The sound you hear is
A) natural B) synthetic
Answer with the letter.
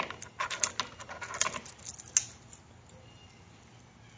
A